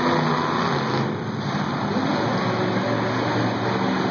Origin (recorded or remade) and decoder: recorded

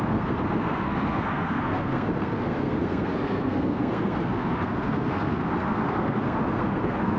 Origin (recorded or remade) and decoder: remade, codec, SNAC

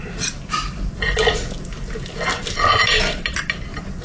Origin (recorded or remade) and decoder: recorded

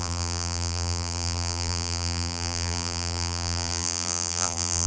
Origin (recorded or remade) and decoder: remade, vocoder, BigVGAN v2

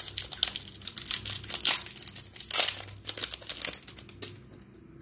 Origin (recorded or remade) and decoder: recorded